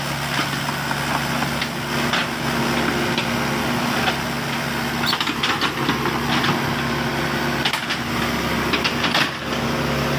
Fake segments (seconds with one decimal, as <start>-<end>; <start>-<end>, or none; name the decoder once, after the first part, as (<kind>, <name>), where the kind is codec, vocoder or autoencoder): none